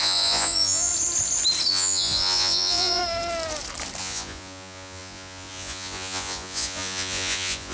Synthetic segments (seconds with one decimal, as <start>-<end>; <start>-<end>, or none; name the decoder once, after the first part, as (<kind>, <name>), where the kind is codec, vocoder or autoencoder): 0.0-0.9 (vocoder, Vocos); 1.7-3.0; 4.0-7.7